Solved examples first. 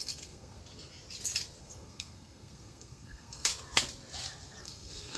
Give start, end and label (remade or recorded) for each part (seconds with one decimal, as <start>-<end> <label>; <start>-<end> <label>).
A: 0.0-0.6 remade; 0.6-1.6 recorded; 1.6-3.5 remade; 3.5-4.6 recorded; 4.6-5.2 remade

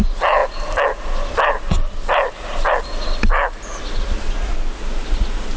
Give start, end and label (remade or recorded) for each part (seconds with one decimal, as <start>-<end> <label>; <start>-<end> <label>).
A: 0.0-5.6 recorded

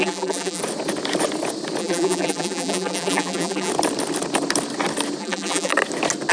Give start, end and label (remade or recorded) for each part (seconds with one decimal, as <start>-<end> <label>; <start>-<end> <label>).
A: 0.0-0.6 remade; 0.6-1.8 recorded; 1.8-3.7 remade; 3.7-5.2 recorded; 5.2-5.7 remade; 5.7-6.3 recorded

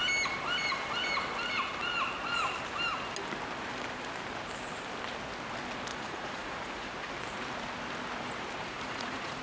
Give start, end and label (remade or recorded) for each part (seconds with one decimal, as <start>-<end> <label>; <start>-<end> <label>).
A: 0.0-5.9 recorded; 5.9-7.1 remade; 7.1-8.6 recorded; 8.6-9.4 remade